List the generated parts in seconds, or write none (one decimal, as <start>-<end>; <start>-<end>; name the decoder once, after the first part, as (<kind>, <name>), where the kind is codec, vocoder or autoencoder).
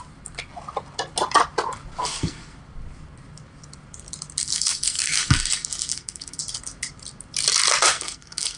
2.0-2.6 (codec, SNAC); 4.4-6.4; 7.9-8.6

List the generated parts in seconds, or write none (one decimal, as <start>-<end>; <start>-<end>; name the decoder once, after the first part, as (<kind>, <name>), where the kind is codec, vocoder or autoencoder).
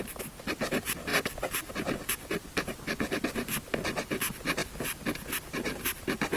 none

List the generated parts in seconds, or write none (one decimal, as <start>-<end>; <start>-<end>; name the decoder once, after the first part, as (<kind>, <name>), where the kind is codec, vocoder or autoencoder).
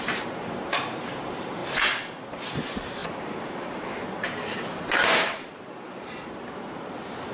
0.0-1.6 (vocoder, BigVGAN v2); 2.2-3.0; 3.6-7.3